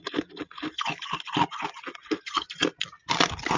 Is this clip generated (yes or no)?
no